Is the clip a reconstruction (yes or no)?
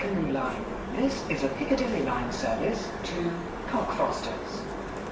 yes